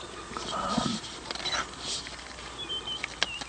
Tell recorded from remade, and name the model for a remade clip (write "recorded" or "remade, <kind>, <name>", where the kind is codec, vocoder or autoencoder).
recorded